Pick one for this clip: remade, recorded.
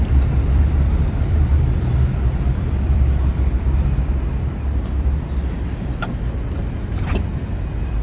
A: remade